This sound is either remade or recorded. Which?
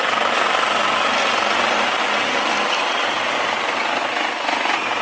recorded